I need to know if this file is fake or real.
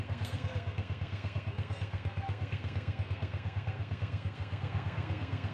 fake